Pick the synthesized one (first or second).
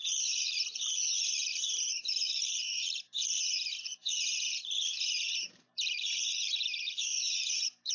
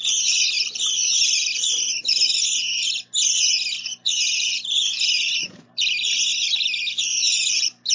first